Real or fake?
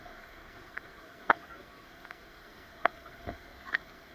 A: fake